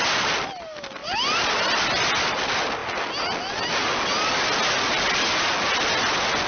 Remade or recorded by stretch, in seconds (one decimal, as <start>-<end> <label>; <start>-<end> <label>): 0.0-1.0 recorded; 1.0-1.5 remade; 1.5-6.5 recorded

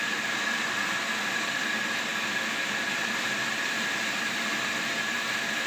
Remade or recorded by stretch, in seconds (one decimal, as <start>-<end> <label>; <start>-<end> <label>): 0.0-2.1 recorded; 2.1-3.4 remade; 3.4-5.7 recorded

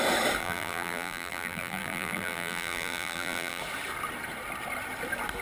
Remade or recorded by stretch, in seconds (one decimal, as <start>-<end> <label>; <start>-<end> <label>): 0.0-0.4 recorded; 0.4-3.6 remade; 3.6-5.4 recorded

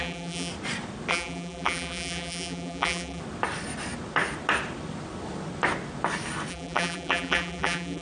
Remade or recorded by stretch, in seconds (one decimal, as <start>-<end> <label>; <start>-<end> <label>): 0.0-0.5 remade; 0.5-1.1 recorded; 1.1-3.2 remade; 3.2-6.5 recorded; 6.5-8.0 remade

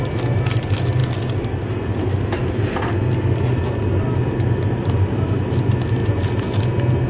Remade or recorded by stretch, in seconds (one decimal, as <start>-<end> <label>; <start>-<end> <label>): 0.0-7.1 recorded

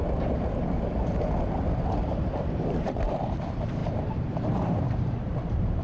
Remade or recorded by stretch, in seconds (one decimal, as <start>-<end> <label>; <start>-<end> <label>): 0.0-5.8 remade

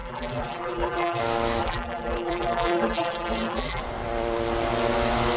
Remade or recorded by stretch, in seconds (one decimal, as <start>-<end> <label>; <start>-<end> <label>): 0.0-1.2 remade; 1.2-1.6 recorded; 1.6-3.8 remade; 3.8-5.4 recorded